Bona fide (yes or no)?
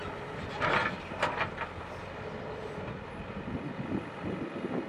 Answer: yes